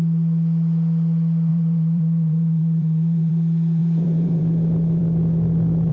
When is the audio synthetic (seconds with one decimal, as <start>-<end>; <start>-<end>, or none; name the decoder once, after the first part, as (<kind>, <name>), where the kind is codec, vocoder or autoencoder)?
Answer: 1.5-3.3 (vocoder, BigVGAN v2); 3.8-4.4